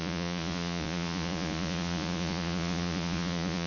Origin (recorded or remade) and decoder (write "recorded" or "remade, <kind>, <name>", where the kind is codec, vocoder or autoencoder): remade, vocoder, Vocos